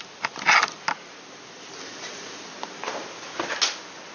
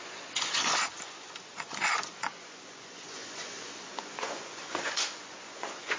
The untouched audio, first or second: first